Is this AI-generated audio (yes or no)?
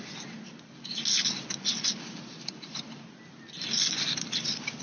no